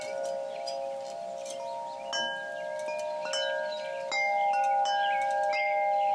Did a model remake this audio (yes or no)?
no